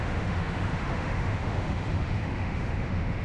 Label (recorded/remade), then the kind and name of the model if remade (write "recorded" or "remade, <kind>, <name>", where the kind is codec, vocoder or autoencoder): remade, autoencoder, DAC-VAE